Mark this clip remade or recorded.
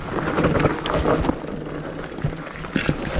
recorded